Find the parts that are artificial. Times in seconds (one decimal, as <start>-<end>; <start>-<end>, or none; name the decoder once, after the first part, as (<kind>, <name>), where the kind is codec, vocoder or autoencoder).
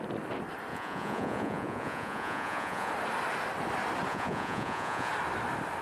0.7-2.9 (vocoder, Vocos); 4.1-5.1